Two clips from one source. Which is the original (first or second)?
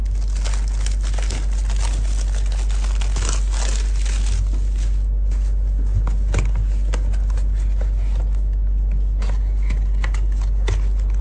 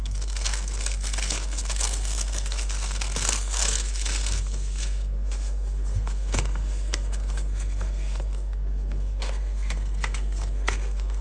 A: first